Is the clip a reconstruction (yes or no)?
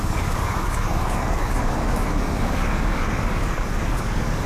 yes